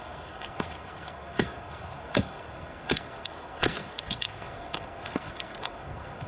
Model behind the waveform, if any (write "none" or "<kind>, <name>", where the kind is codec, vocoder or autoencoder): codec, SNAC